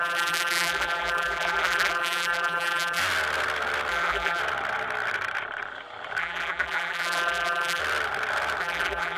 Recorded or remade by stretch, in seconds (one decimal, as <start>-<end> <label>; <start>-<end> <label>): 0.0-3.0 remade; 3.0-3.9 recorded; 3.9-4.4 remade; 4.4-6.2 recorded; 6.2-7.8 remade; 7.8-8.6 recorded; 8.6-9.2 remade

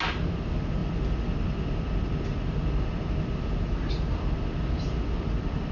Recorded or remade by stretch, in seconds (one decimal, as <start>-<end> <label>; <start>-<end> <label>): 0.0-5.7 recorded

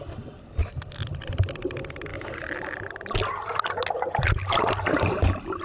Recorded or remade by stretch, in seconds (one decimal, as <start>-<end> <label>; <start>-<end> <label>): 0.0-5.6 recorded

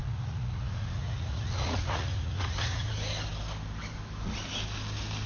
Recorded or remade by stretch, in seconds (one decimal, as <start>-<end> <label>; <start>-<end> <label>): 0.0-2.9 remade; 2.9-5.3 recorded

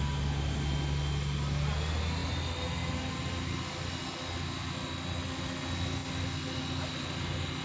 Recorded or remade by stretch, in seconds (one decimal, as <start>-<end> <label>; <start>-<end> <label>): 0.0-7.6 recorded